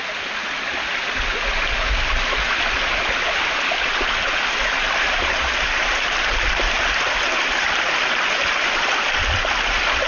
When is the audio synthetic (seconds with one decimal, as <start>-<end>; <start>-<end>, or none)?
none